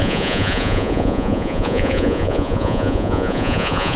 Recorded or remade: remade